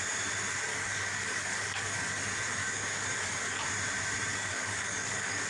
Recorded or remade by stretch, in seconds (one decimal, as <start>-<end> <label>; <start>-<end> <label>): 0.0-0.7 recorded; 0.7-2.2 remade; 2.2-2.6 recorded; 2.6-3.6 remade; 3.6-4.3 recorded; 4.3-5.5 remade